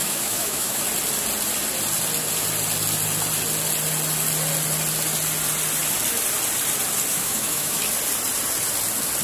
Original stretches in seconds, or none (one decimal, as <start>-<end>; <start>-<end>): 0.8-7.1; 7.8-9.2